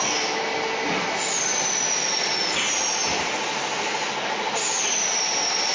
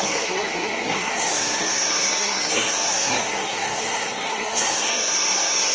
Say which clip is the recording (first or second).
first